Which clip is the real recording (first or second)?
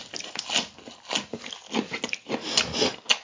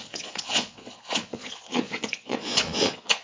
first